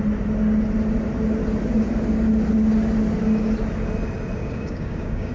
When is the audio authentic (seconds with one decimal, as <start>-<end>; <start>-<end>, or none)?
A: 0.0-4.4